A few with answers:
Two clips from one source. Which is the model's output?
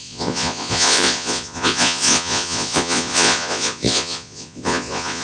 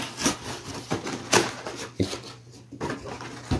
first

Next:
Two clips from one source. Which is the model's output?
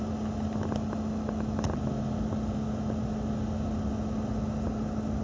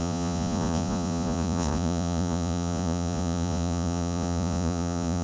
second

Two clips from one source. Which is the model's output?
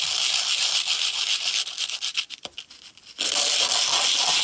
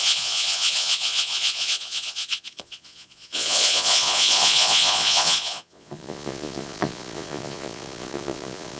second